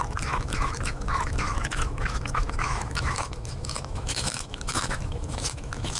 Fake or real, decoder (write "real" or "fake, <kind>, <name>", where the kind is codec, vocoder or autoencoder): fake, autoencoder, DAC-VAE